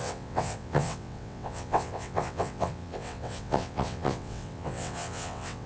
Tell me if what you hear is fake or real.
fake